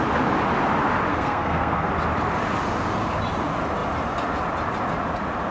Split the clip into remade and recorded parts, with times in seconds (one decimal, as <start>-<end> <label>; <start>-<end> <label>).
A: 0.0-1.1 recorded; 1.1-1.9 remade; 1.9-5.5 recorded